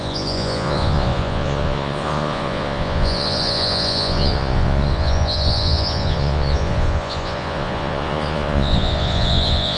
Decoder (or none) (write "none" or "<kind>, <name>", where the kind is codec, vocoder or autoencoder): vocoder, Vocos